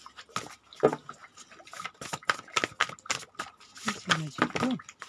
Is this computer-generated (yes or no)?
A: no